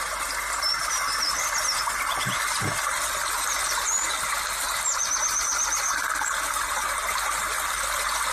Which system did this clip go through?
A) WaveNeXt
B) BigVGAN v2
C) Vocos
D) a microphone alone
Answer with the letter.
D